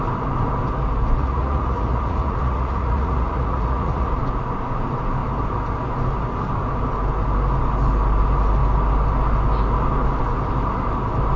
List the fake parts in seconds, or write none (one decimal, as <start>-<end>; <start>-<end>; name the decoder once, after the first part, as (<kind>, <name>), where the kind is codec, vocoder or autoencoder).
1.2-4.2 (vocoder, Vocos)